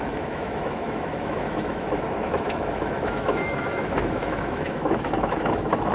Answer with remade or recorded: remade